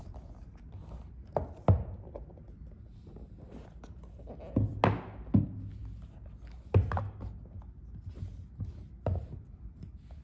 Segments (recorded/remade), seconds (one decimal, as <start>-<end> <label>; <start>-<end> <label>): 0.0-10.2 recorded